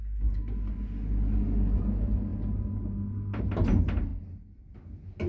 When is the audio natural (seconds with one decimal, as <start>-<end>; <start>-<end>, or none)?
0.0-5.3